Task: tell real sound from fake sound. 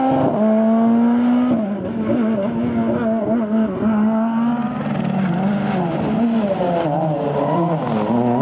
real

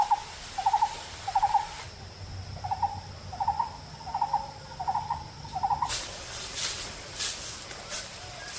fake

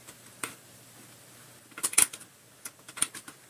fake